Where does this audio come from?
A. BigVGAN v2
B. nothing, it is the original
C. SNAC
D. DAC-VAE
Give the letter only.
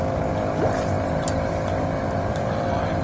B